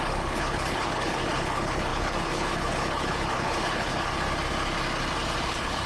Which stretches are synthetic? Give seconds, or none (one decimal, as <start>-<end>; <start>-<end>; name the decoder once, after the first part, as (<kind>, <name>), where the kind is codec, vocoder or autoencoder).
0.0-4.1 (codec, HILCodec); 5.4-5.9

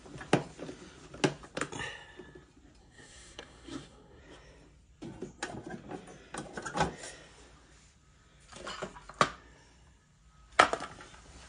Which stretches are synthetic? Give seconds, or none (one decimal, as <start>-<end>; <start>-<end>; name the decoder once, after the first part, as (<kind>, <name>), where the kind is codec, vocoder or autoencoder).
2.8-4.2 (codec, SNAC)

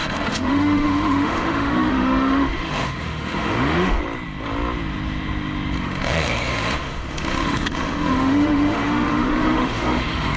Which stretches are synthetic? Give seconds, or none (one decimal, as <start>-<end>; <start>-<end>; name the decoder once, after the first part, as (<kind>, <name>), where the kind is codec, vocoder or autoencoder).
0.0-4.0 (autoencoder, DAC-VAE); 5.8-10.4

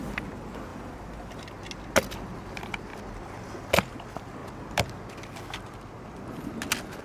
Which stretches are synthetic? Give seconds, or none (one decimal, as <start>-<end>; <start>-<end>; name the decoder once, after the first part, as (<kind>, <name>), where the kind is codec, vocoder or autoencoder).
0.7-1.4 (vocoder, BigVGAN v2)

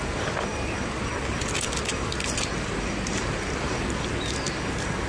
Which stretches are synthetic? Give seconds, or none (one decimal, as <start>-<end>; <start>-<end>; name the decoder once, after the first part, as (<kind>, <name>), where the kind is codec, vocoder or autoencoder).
none

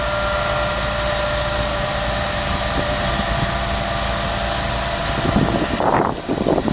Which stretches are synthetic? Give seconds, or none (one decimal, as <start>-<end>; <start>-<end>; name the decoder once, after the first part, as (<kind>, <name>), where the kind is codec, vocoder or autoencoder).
1.7-3.1 (vocoder, BigVGAN v2)

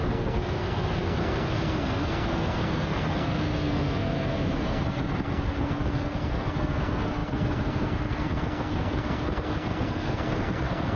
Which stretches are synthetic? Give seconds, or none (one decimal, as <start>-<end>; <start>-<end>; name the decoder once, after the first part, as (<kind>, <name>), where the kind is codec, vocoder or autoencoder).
0.0-11.0 (codec, SNAC)

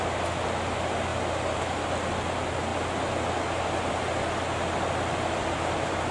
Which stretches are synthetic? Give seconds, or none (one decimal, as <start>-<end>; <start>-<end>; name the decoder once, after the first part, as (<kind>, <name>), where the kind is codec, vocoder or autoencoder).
none